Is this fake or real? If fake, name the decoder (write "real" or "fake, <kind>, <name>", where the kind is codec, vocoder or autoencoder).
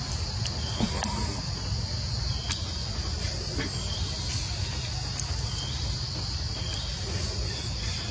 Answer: real